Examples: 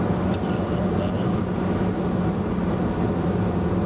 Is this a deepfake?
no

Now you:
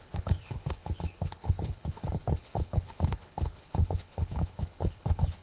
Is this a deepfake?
yes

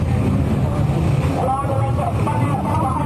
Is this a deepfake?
yes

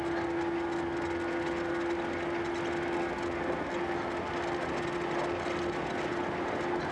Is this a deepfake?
no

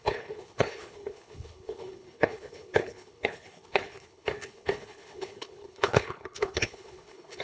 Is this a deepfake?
yes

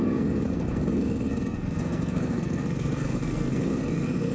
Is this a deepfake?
yes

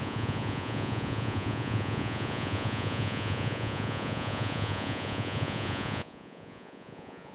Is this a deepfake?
yes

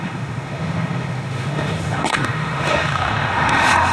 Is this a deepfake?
yes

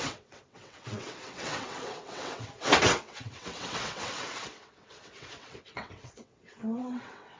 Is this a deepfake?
yes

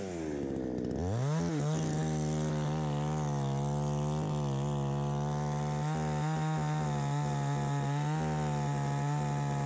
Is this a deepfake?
no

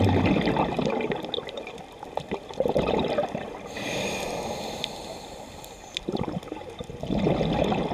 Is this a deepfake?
no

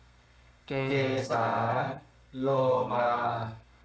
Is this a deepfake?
yes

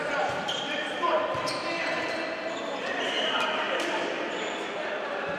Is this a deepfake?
yes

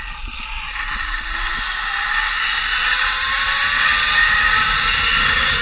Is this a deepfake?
no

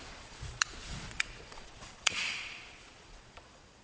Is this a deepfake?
yes